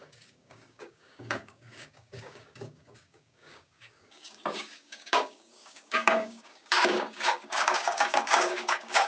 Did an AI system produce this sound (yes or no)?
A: yes